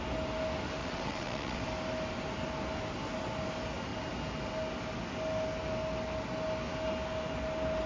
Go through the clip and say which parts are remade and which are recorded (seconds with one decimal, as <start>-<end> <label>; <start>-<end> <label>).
0.0-0.8 recorded; 0.8-1.6 remade; 1.6-7.9 recorded